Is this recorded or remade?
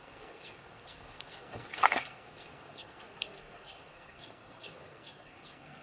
remade